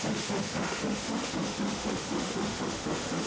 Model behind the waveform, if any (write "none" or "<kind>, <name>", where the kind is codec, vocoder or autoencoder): autoencoder, DAC-VAE